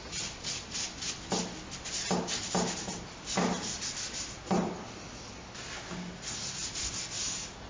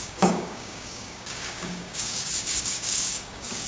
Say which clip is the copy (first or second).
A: second